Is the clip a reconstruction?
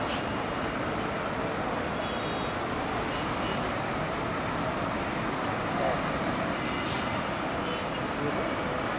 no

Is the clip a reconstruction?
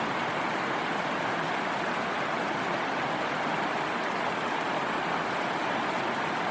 no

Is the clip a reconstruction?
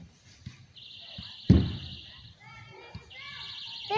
no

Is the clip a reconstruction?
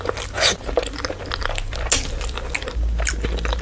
no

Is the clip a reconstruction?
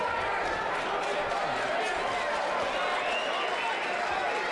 no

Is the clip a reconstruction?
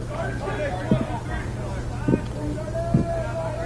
no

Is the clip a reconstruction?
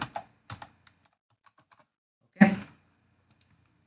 no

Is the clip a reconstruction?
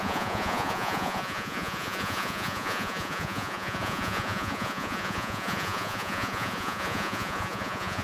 yes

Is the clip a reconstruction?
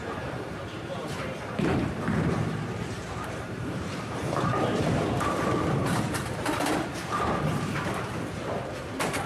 yes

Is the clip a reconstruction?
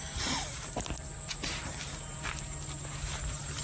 no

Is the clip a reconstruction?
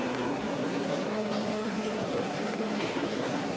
yes